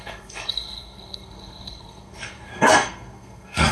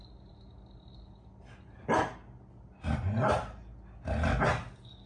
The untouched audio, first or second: second